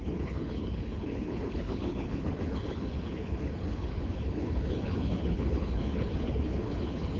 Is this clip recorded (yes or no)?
no